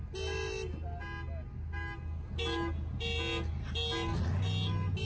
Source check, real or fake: real